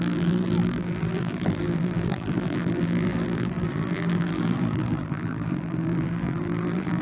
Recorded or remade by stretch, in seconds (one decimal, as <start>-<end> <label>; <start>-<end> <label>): 0.0-7.0 remade